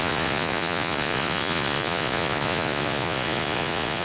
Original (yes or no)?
no